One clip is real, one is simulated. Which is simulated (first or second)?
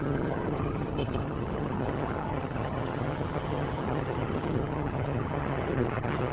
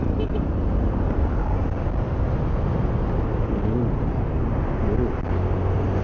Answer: first